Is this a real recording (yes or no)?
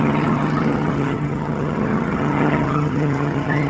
no